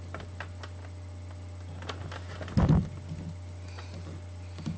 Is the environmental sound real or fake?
real